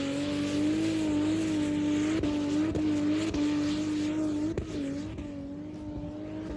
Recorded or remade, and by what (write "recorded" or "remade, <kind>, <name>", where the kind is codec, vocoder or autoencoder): recorded